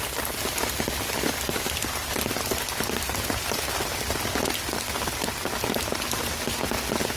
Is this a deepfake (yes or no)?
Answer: no